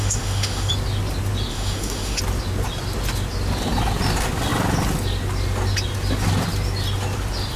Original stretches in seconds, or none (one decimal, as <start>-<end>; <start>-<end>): 0.7-1.5; 2.2-7.6